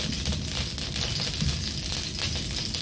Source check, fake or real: real